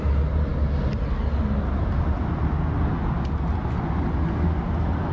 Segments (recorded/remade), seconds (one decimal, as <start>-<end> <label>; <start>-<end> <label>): 0.0-5.1 recorded